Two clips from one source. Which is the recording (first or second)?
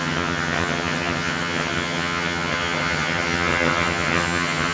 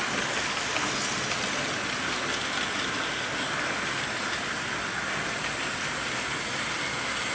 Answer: second